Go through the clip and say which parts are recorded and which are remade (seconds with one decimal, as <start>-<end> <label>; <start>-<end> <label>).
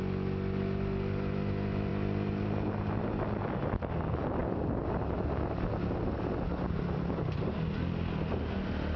0.0-9.0 recorded